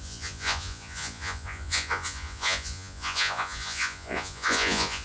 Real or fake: fake